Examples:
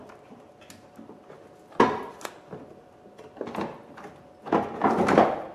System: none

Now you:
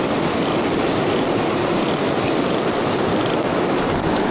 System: none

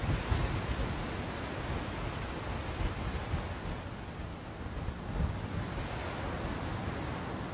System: none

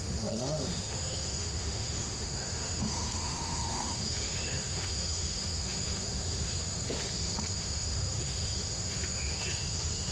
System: autoencoder, DAC-VAE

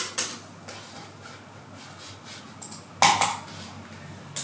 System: none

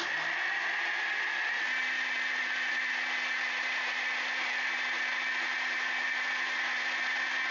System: none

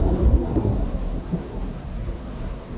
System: codec, SNAC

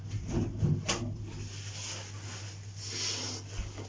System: none